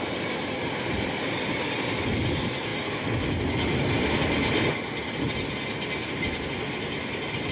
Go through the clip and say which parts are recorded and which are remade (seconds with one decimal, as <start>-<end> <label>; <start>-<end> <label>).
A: 0.0-7.5 recorded